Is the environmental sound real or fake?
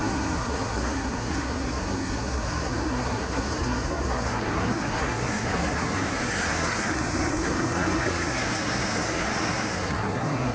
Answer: fake